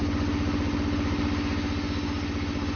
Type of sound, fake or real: real